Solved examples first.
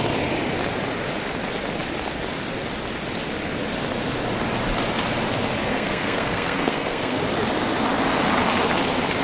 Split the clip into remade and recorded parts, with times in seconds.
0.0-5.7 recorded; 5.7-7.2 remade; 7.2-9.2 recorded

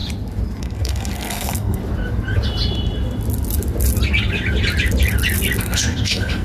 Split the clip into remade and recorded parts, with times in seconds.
0.0-0.6 recorded; 0.6-1.8 remade; 1.8-5.6 recorded; 5.6-6.4 remade

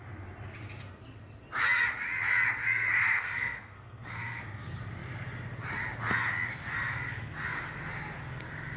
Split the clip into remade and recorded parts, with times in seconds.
0.0-3.0 recorded; 3.0-4.4 remade; 4.4-8.8 recorded

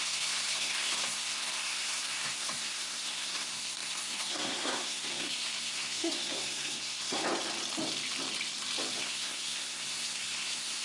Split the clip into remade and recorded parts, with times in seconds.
0.0-7.2 remade; 7.2-9.0 recorded; 9.0-10.8 remade